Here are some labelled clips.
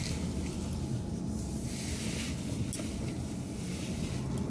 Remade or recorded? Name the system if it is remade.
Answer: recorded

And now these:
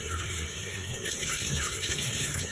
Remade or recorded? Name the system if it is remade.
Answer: remade, codec, SNAC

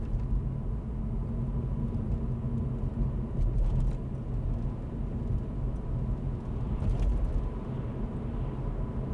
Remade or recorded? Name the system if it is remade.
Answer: recorded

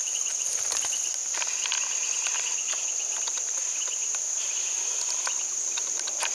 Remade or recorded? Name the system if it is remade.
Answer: remade, vocoder, BigVGAN v2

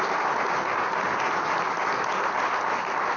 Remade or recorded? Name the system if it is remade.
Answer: recorded